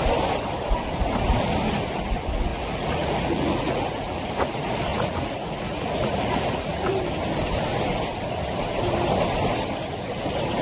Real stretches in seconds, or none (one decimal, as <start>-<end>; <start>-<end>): 0.0-2.5; 4.5-4.9; 6.9-10.6